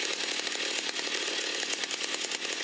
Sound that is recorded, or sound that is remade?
remade